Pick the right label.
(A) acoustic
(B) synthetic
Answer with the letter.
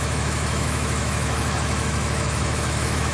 B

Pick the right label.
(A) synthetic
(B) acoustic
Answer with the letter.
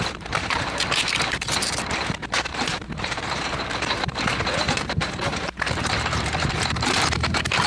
A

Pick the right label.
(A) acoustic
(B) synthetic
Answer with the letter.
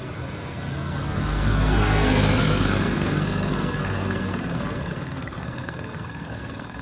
B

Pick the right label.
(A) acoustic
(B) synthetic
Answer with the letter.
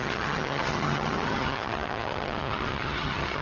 B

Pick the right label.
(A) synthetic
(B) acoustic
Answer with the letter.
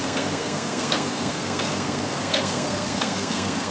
A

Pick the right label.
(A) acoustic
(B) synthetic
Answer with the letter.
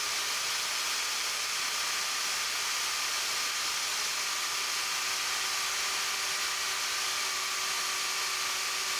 A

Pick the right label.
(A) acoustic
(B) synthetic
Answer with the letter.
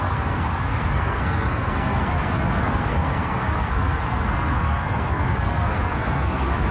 B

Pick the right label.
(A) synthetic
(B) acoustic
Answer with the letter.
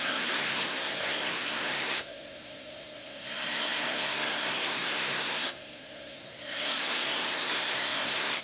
A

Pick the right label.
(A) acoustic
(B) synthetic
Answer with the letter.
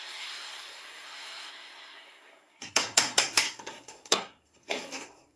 B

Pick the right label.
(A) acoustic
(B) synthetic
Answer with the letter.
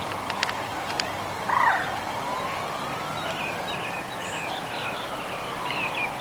A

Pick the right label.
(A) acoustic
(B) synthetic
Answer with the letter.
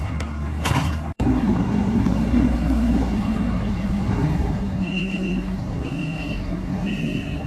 B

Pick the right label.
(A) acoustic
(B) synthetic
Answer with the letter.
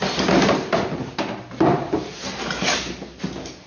A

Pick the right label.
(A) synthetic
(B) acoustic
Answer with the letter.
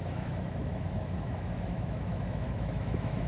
A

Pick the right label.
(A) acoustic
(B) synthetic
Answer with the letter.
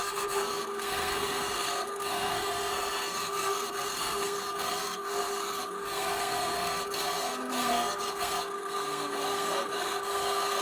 B